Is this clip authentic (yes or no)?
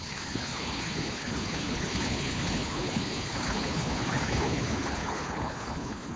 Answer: no